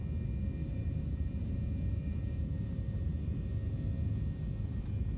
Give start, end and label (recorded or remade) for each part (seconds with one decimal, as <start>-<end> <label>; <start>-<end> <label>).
0.0-0.6 recorded; 0.6-3.5 remade; 3.5-5.2 recorded